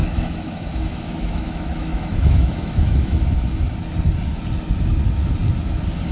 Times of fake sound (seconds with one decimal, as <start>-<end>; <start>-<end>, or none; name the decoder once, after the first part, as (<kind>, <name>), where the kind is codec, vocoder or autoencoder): 0.0-3.7 (autoencoder, DAC-VAE)